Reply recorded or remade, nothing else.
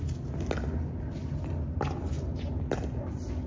recorded